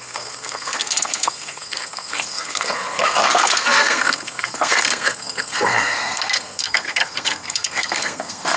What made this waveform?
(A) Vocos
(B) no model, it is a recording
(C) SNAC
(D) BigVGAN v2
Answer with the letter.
C